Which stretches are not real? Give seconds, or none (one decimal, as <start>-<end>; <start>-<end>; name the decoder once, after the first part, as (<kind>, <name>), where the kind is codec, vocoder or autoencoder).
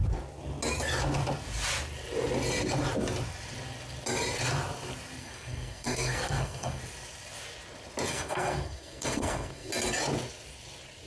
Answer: 5.2-6.8 (codec, SNAC); 8.1-9.7